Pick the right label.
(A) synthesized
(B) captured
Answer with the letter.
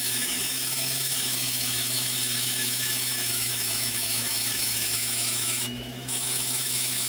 A